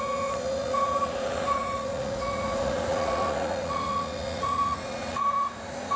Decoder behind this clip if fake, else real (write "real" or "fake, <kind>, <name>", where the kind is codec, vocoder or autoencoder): fake, vocoder, Vocos